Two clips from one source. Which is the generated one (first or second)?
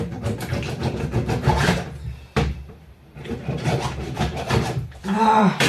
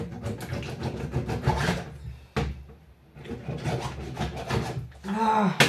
first